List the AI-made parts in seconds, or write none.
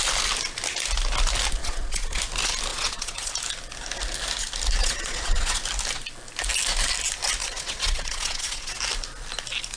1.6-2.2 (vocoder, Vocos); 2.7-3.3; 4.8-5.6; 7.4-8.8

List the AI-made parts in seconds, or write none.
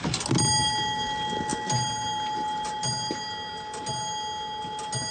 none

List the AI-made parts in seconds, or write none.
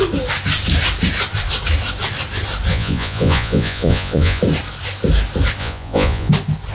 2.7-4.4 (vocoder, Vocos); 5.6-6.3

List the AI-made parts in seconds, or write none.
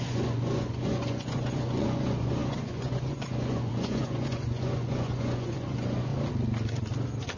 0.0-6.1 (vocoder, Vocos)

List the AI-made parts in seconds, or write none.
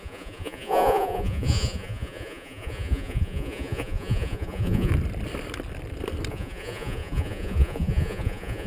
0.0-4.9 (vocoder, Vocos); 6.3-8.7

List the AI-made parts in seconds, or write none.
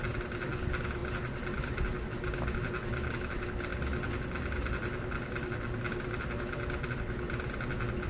none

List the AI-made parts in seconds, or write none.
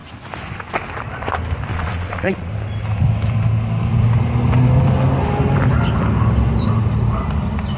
1.7-2.5 (vocoder, Vocos)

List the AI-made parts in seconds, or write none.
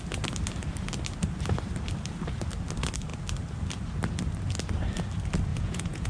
5.5-6.1 (vocoder, Vocos)